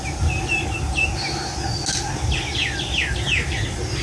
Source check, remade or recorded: recorded